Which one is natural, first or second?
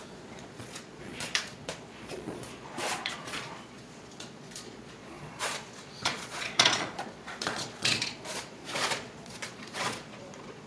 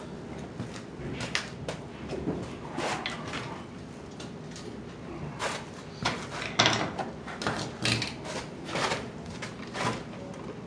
second